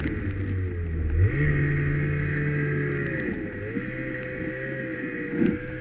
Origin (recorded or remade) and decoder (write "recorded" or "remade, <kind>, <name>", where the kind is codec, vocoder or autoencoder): recorded